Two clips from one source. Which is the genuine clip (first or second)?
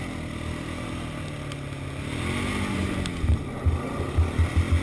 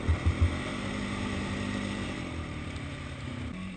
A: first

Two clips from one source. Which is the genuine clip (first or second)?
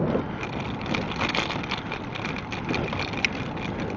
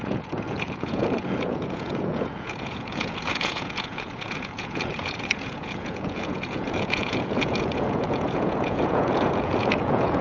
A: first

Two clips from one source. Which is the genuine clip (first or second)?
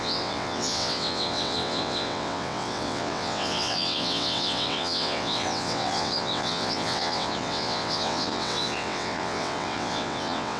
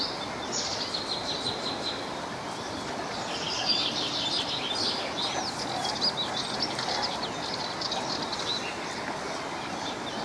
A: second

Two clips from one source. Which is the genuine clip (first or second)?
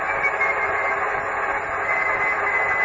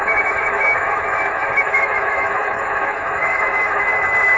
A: first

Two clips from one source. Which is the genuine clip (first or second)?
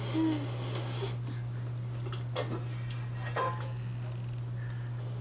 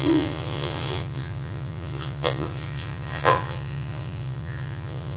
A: first